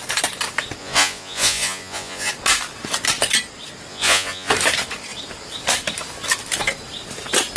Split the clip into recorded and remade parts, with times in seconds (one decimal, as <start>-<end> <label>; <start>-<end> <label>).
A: 0.0-0.8 recorded; 0.8-2.3 remade; 2.3-3.9 recorded; 3.9-4.5 remade; 4.5-7.6 recorded